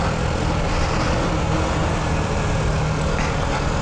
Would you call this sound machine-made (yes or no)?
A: no